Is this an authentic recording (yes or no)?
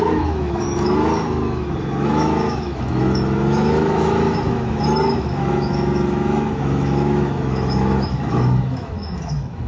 no